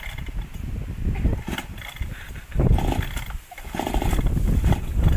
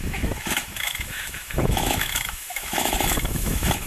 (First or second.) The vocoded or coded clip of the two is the second